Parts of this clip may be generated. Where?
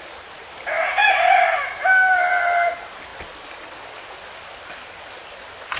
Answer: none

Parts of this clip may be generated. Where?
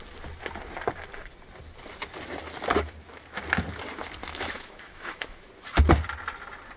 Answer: 4.2-5.5